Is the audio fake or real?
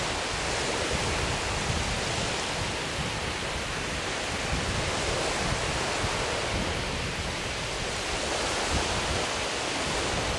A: real